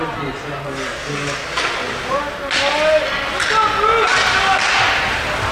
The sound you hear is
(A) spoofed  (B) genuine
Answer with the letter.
B